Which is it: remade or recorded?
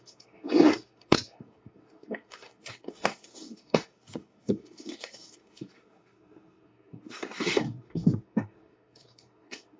remade